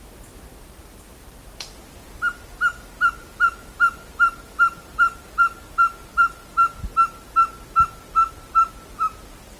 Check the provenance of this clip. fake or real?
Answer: real